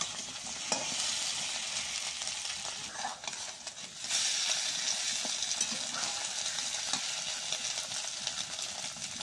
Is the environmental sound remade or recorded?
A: recorded